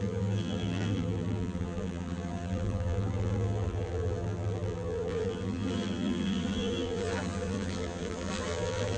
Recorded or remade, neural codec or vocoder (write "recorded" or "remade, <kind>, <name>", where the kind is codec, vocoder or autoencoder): remade, vocoder, BigVGAN v2